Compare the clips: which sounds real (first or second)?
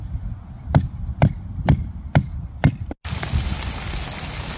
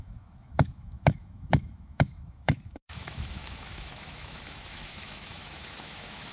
first